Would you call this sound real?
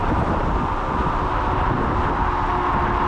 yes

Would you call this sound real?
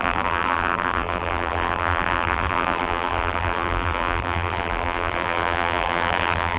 no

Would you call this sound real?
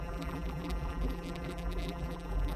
no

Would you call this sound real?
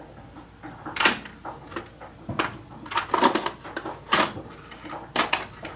yes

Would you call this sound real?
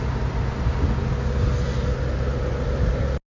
yes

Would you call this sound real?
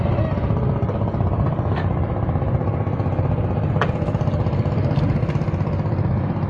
yes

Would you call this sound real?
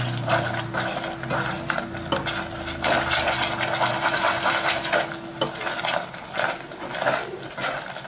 yes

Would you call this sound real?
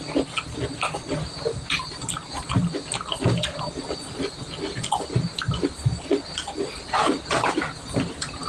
yes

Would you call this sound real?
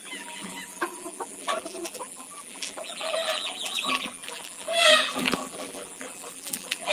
no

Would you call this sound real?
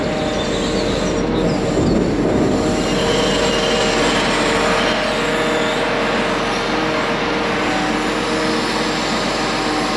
yes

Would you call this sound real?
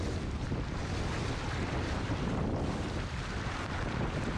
no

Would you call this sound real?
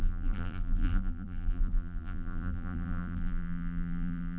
no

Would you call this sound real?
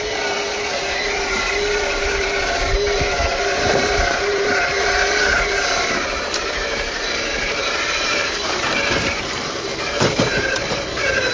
no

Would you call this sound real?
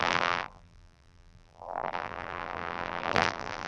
no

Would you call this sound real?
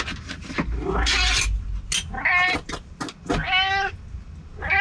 yes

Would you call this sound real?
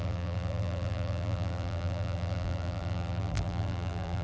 no